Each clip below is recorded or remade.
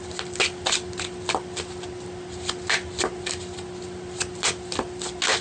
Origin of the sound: recorded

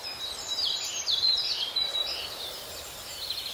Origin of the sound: remade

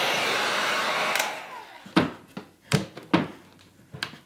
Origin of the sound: recorded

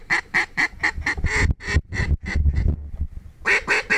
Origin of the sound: recorded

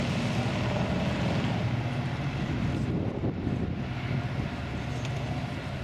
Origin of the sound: recorded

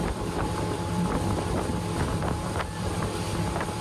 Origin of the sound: remade